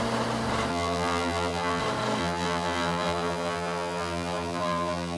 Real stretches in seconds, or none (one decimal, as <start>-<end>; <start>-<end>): 0.0-0.7; 1.8-2.2